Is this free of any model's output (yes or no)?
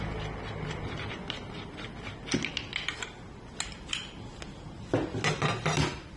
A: yes